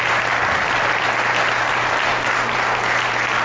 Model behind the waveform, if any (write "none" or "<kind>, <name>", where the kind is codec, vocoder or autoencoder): none